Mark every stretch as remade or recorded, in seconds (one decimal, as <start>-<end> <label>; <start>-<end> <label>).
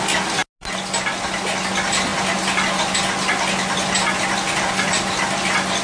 0.0-5.8 recorded